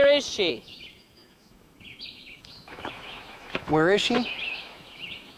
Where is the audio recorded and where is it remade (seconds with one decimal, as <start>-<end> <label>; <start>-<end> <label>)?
0.0-0.5 recorded; 0.5-5.4 remade